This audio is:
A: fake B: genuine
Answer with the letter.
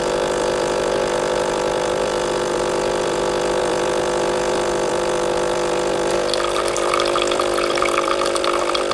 A